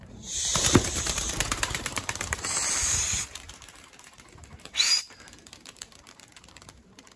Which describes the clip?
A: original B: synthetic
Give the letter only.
B